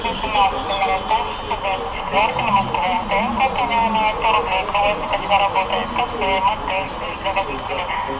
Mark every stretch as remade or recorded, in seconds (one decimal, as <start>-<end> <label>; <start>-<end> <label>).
0.0-8.2 recorded